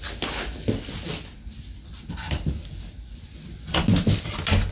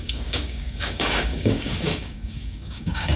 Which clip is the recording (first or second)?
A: first